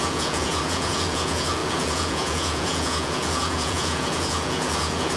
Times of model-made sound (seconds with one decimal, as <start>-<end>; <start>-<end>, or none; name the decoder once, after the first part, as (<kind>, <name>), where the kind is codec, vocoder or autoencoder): 0.0-5.2 (vocoder, Vocos)